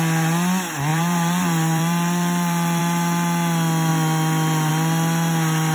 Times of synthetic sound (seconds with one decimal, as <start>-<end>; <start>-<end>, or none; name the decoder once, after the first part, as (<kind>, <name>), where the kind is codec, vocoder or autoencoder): 0.9-2.8 (vocoder, BigVGAN v2)